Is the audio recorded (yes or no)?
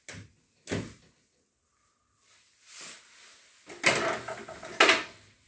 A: yes